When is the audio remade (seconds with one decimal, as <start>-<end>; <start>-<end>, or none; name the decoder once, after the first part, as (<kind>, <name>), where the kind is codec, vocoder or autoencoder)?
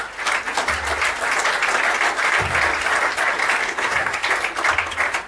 3.6-4.2 (codec, SNAC)